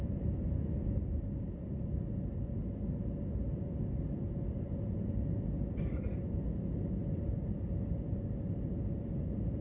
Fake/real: real